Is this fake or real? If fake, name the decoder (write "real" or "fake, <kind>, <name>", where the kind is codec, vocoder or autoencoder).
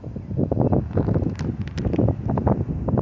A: real